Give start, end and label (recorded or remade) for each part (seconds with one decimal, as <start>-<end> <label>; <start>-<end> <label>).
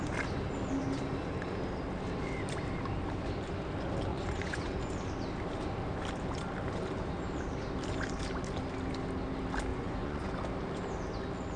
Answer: 0.0-4.1 recorded; 4.1-4.9 remade; 4.9-9.7 recorded; 9.7-10.3 remade; 10.3-11.6 recorded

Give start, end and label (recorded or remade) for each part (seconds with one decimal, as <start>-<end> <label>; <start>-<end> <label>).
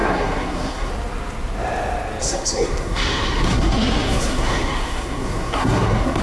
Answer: 0.0-0.9 remade; 0.9-2.2 recorded; 2.2-6.2 remade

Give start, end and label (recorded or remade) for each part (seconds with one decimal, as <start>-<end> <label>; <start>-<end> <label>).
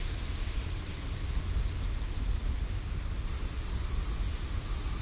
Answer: 0.0-5.0 recorded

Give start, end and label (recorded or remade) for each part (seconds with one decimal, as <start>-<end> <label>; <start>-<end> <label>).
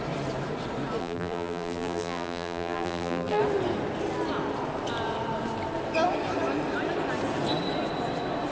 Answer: 0.0-1.0 recorded; 1.0-3.4 remade; 3.4-8.5 recorded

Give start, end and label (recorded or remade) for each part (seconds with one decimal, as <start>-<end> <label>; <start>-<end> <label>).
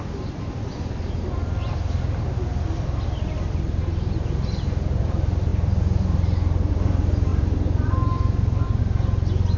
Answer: 0.0-7.3 recorded; 7.3-8.8 remade; 8.8-9.6 recorded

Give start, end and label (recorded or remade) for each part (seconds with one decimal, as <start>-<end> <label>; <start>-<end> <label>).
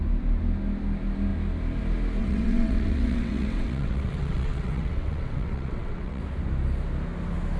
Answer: 0.0-2.2 recorded; 2.2-6.2 remade; 6.2-7.6 recorded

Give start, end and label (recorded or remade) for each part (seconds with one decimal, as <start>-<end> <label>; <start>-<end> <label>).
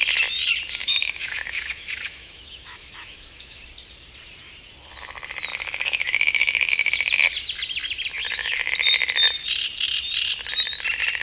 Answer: 0.0-0.8 recorded; 0.8-3.6 remade; 3.6-5.5 recorded; 5.5-6.7 remade; 6.7-8.2 recorded; 8.2-8.7 remade; 8.7-11.2 recorded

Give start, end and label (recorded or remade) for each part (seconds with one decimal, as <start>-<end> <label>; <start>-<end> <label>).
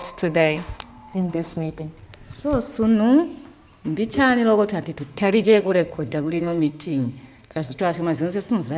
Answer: 0.0-1.8 remade; 1.8-5.1 recorded; 5.1-7.8 remade; 7.8-8.8 recorded